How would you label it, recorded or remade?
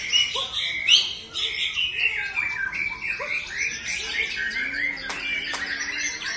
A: recorded